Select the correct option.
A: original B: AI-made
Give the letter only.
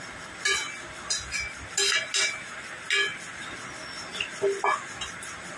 A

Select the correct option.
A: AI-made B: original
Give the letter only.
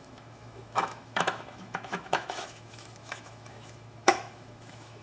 A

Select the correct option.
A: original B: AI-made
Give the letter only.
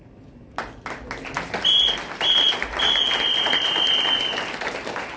A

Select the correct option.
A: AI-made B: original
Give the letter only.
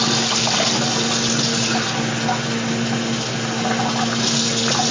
B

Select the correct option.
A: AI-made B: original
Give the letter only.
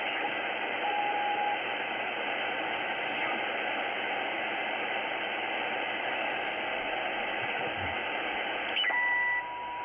B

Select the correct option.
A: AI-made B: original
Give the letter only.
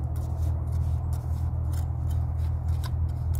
B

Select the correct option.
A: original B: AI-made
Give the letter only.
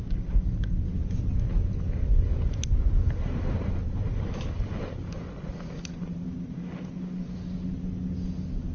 A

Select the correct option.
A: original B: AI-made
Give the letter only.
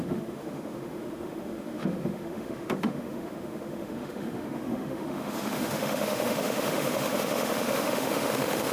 B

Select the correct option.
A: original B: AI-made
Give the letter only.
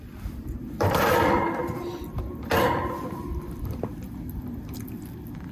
A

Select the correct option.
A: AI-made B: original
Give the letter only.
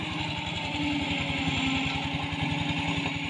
B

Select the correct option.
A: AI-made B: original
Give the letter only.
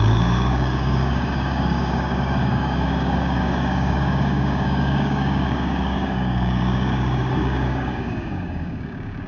A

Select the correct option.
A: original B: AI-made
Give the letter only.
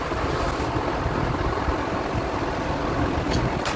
A